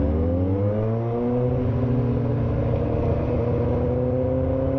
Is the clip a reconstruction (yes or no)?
no